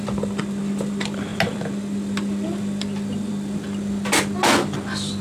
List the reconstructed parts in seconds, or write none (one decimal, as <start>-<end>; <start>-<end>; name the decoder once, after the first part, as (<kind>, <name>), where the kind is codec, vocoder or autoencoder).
none